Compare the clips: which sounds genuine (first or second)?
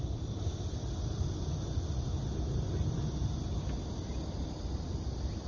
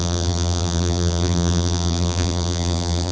first